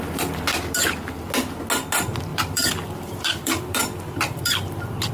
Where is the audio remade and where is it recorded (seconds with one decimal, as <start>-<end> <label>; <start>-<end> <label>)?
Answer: 0.0-2.3 recorded; 2.3-5.1 remade

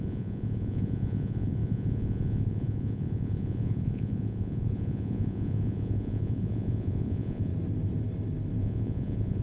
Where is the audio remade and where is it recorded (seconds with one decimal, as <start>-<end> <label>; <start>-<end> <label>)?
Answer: 0.0-7.5 remade; 7.5-8.6 recorded; 8.6-9.4 remade

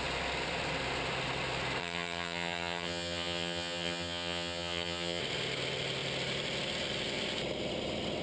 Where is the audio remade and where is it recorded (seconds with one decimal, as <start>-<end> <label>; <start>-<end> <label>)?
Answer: 0.0-1.8 recorded; 1.8-5.2 remade; 5.2-8.2 recorded

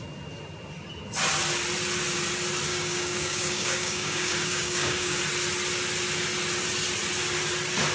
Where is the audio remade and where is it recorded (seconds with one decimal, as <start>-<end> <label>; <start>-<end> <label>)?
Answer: 0.0-2.7 recorded; 2.7-5.2 remade; 5.2-7.9 recorded

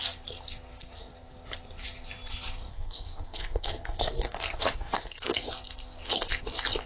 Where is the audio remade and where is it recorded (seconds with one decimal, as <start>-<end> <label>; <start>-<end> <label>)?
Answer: 0.0-2.7 recorded; 2.7-5.5 remade; 5.5-6.9 recorded

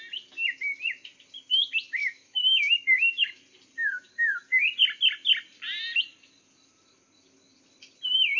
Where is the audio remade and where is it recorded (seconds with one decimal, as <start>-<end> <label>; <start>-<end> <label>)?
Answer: 0.0-2.0 recorded; 2.0-3.4 remade; 3.4-8.4 recorded

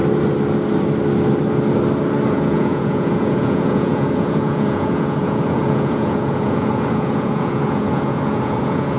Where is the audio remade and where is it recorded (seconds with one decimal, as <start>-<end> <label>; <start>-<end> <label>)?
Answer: 0.0-2.3 recorded; 2.3-9.0 remade

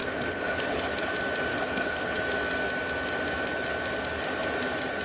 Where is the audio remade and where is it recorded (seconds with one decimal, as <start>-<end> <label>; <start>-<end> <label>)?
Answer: 0.0-1.1 remade; 1.1-1.5 recorded; 1.5-2.2 remade; 2.2-5.0 recorded